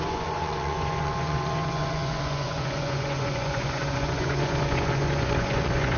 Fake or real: fake